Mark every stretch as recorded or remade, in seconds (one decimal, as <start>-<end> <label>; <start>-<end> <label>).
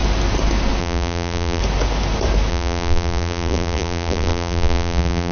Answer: 0.0-0.8 recorded; 0.8-1.6 remade; 1.6-2.5 recorded; 2.5-5.3 remade